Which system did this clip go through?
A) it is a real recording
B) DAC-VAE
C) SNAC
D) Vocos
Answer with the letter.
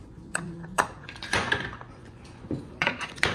D